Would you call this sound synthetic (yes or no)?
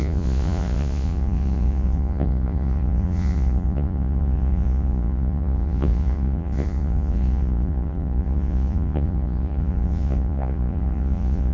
yes